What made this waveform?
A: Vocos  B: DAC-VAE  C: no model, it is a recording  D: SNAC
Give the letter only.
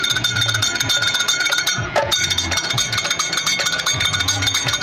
A